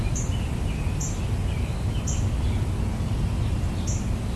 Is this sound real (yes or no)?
yes